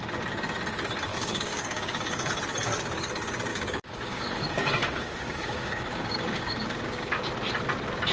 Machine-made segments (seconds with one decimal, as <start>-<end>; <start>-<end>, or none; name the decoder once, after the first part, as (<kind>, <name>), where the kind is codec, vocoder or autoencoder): 1.1-2.3 (codec, DAC); 3.5-7.3